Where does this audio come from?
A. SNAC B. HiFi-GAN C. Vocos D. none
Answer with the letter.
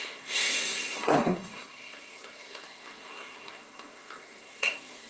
A